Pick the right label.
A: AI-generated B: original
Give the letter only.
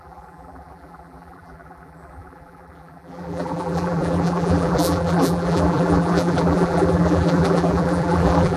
A